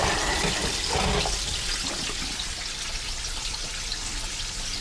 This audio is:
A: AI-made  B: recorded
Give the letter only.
B